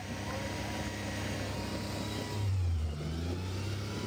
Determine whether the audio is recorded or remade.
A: recorded